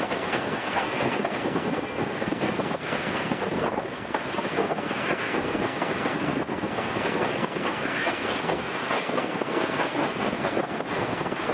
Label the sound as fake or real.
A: fake